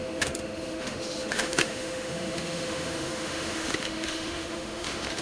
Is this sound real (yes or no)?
no